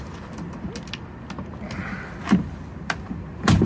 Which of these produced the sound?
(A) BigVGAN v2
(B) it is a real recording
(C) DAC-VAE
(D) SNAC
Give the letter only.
B